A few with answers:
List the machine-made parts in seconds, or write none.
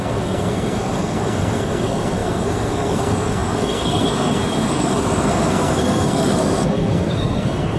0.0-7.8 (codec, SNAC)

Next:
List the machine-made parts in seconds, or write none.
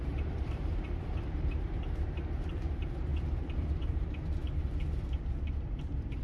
0.0-3.1 (vocoder, BigVGAN v2); 3.8-6.2